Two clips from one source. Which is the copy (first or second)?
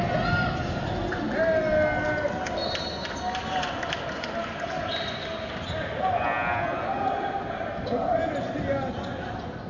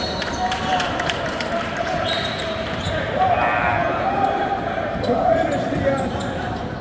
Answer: second